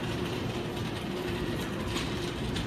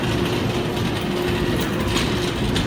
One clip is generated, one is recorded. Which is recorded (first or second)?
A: second